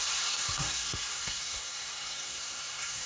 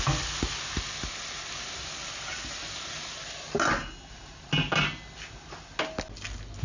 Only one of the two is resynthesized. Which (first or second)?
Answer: first